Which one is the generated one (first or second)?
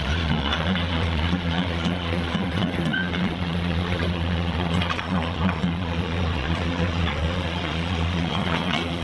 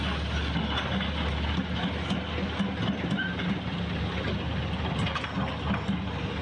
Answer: first